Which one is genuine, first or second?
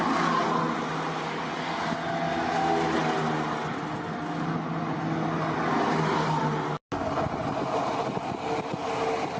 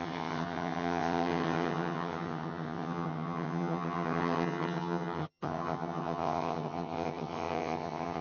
first